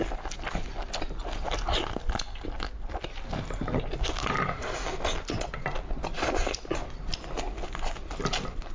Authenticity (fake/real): real